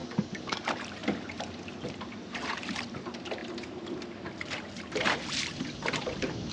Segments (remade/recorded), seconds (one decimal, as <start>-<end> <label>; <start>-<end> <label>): 0.0-0.5 remade; 0.5-6.5 recorded